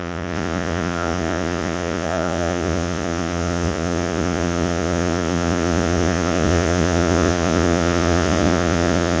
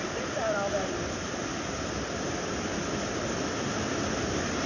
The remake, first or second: first